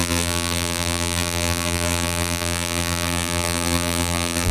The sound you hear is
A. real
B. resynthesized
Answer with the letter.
B